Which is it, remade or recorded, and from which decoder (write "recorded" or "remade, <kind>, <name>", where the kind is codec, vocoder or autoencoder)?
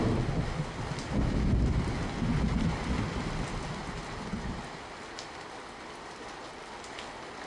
recorded